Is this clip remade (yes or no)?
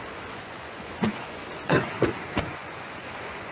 yes